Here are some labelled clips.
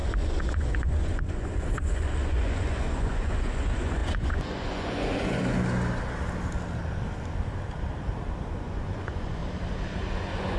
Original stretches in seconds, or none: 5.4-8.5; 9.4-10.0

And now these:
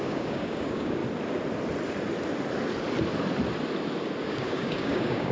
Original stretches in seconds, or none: 1.0-4.2

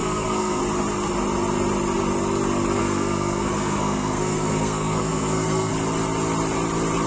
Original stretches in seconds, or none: 0.6-2.8; 5.7-7.1

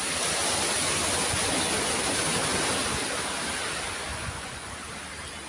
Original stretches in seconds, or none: 0.0-4.1; 4.7-5.5

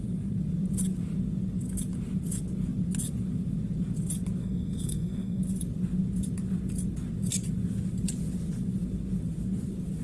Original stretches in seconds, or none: 0.0-4.4; 5.4-10.0